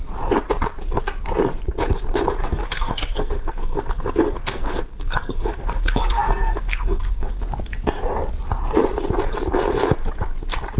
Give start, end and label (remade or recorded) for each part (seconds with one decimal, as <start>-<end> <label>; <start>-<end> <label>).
0.0-2.4 recorded; 2.4-7.4 remade; 7.4-10.8 recorded